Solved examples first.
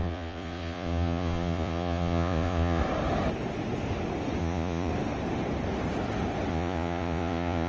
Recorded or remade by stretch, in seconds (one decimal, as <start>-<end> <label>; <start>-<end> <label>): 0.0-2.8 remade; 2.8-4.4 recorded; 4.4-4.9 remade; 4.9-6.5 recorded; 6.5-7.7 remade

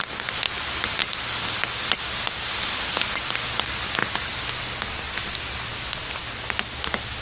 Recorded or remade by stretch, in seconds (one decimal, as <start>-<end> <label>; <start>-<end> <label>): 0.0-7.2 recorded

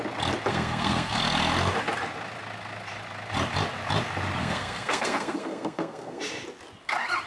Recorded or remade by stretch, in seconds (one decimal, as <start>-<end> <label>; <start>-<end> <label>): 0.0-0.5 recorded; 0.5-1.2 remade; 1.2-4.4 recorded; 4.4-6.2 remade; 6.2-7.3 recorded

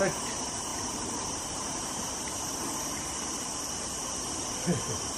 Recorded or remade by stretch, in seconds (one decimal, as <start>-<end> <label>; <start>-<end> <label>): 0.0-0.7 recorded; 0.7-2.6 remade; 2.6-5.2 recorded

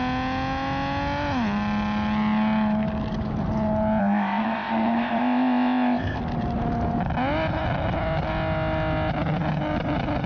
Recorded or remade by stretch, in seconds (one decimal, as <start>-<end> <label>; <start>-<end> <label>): 0.0-4.0 recorded; 4.0-6.2 remade; 6.2-10.3 recorded

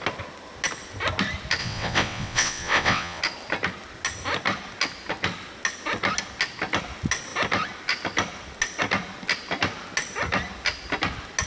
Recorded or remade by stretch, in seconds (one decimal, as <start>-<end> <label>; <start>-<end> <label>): 0.0-1.6 recorded; 1.6-3.2 remade; 3.2-11.5 recorded